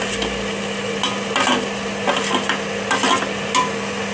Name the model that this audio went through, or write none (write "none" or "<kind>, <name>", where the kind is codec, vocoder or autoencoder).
none